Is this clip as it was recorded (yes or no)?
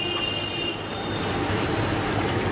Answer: yes